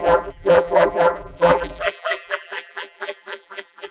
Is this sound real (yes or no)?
no